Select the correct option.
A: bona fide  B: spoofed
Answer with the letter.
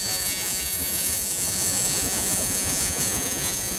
B